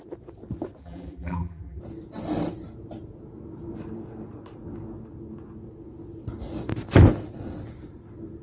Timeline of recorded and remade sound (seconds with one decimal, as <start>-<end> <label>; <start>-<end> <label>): 0.0-0.8 recorded; 0.8-1.8 remade; 1.8-8.4 recorded